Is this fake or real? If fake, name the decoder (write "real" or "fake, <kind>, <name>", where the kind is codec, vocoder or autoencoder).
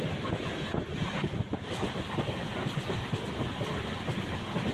real